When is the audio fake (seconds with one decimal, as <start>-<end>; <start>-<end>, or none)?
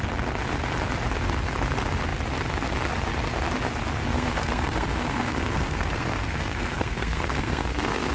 4.0-8.1